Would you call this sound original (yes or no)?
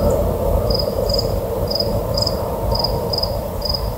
no